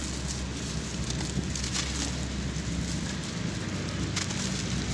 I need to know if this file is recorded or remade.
recorded